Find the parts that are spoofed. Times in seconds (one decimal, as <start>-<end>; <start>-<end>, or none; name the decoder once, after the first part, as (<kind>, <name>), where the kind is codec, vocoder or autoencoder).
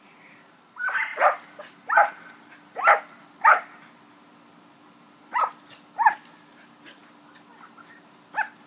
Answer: 1.1-5.4 (vocoder, BigVGAN v2)